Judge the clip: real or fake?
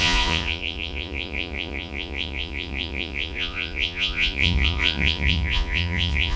fake